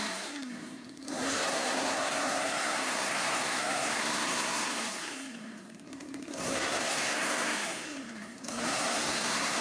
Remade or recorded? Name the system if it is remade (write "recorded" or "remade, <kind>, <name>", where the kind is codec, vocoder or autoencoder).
remade, codec, SNAC